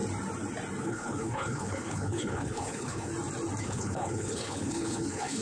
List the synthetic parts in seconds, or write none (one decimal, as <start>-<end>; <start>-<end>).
0.8-3.1; 3.6-5.4